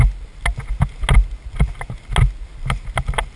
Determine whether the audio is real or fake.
real